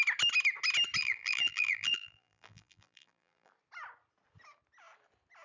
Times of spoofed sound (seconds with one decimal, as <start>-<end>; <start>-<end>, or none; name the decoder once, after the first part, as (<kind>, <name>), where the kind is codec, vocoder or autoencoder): 1.0-3.5 (vocoder, BigVGAN v2)